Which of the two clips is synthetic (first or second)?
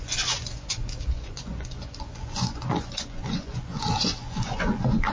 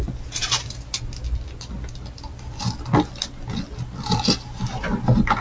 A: first